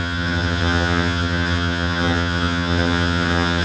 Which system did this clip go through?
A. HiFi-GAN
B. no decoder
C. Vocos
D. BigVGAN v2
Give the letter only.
A